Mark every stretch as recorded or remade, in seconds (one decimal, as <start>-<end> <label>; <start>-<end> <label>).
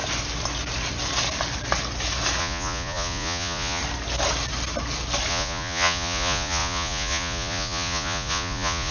0.0-2.4 recorded; 2.4-3.8 remade; 3.8-5.3 recorded; 5.3-8.9 remade